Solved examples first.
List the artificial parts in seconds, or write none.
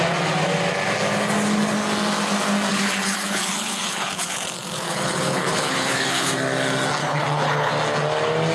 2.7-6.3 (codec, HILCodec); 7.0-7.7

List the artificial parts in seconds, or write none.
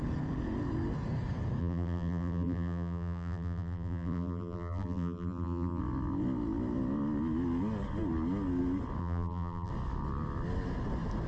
1.6-5.8 (vocoder, BigVGAN v2); 9.0-9.7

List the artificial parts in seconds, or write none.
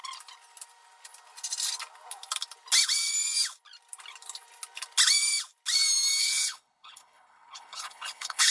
6.2-8.5 (codec, HILCodec)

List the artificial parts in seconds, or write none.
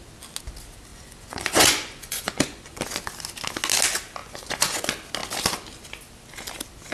0.9-2.8 (vocoder, Vocos); 4.2-4.8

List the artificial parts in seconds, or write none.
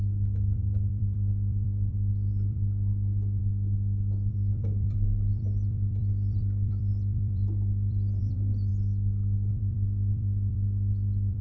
0.0-3.4 (vocoder, BigVGAN v2); 4.3-8.7; 9.5-11.4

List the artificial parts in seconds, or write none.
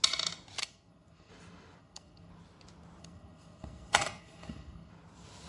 0.6-1.3 (codec, SNAC); 1.8-2.3; 3.0-4.9